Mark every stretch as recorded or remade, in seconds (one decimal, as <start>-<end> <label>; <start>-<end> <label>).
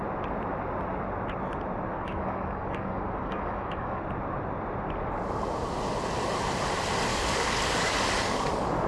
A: 0.0-1.9 recorded; 1.9-4.0 remade; 4.0-7.1 recorded; 7.1-8.9 remade